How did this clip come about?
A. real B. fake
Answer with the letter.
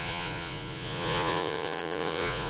B